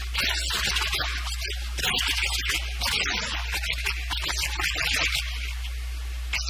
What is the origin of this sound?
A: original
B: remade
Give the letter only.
A